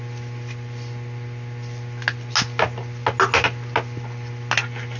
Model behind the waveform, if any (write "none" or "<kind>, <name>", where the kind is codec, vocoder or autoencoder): none